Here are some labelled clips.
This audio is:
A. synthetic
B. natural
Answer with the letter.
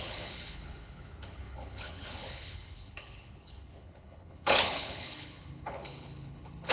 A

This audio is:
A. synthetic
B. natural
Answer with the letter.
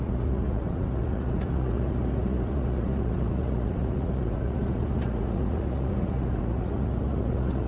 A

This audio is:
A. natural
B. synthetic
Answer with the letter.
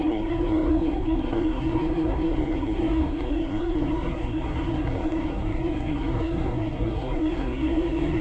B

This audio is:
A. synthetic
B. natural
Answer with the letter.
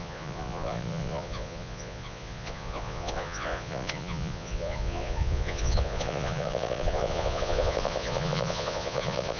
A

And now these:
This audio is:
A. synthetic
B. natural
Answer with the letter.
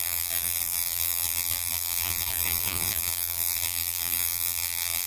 A